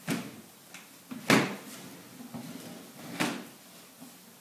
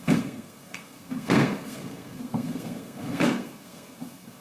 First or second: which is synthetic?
second